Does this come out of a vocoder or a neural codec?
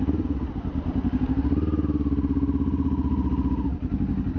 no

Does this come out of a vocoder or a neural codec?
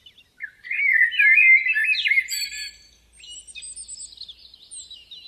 no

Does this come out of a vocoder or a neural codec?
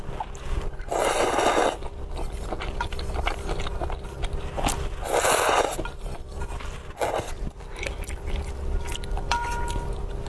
no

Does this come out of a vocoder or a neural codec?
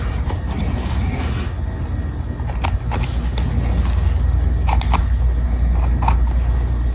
no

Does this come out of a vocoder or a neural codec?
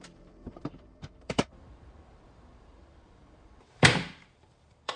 yes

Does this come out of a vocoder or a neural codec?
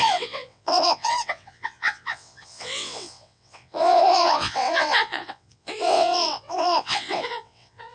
yes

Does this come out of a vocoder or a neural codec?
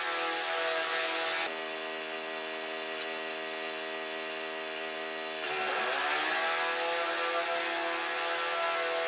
no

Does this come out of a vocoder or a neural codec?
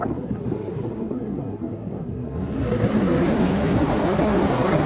yes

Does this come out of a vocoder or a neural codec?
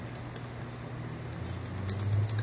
no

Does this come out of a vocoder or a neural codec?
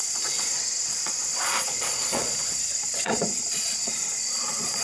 yes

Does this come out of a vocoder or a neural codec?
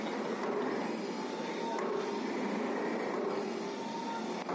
no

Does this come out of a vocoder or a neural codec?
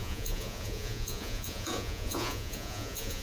yes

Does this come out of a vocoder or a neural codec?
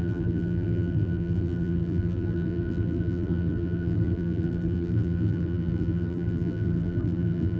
yes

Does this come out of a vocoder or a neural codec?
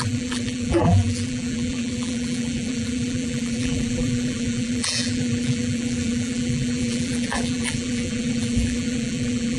yes